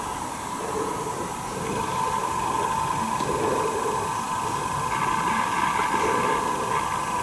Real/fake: real